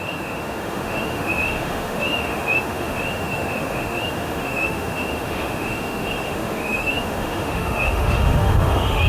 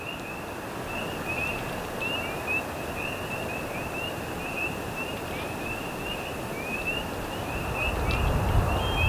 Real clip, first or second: second